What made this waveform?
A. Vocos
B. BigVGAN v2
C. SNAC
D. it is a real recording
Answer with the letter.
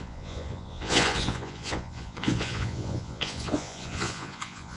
A